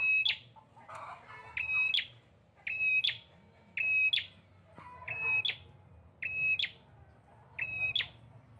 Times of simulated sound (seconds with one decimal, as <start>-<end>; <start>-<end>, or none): none